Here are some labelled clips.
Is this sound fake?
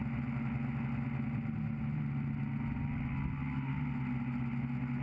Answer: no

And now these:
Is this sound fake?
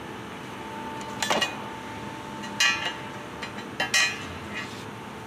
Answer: no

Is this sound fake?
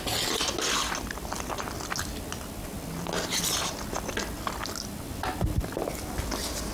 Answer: no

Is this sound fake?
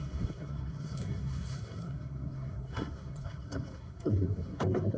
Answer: yes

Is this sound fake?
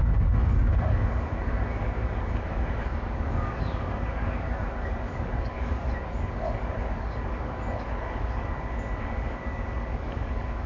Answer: yes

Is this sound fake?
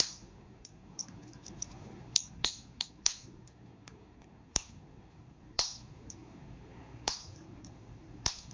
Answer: yes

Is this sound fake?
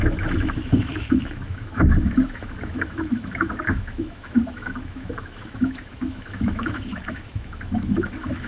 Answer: yes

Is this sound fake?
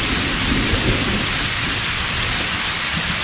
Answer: yes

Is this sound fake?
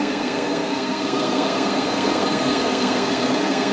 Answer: yes